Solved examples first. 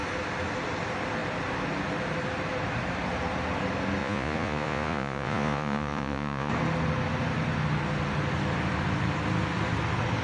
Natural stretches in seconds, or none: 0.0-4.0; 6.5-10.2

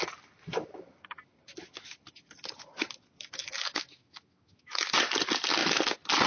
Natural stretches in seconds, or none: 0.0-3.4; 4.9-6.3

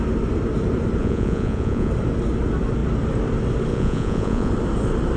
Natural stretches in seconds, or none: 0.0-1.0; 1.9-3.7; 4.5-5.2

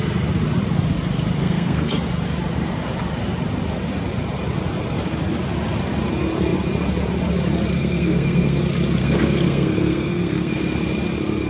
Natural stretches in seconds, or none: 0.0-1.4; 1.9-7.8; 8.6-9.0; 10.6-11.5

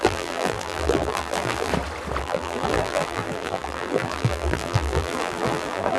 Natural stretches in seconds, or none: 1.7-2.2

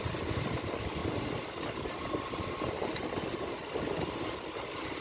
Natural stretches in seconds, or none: 0.0-5.0